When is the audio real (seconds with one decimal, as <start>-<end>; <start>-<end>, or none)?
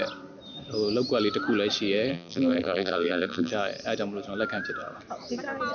0.0-2.1; 3.5-5.7